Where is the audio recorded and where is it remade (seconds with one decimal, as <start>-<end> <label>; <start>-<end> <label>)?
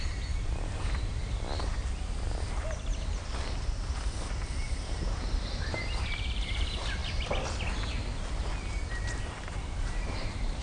0.0-1.2 remade; 1.2-4.6 recorded; 4.6-7.0 remade; 7.0-9.2 recorded; 9.2-10.6 remade